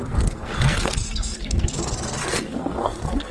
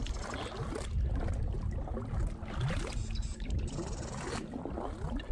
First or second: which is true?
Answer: second